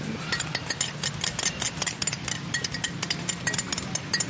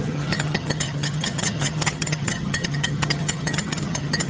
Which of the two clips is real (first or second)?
first